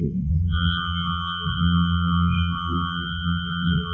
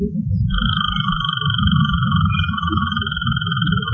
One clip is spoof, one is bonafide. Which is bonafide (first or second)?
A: second